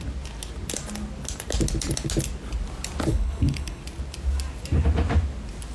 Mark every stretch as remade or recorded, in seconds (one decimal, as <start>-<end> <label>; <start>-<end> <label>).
0.0-3.1 recorded; 3.1-3.8 remade; 3.8-5.7 recorded